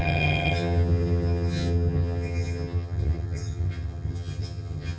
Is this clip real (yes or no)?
no